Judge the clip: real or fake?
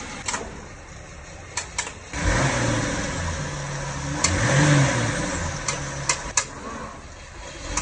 real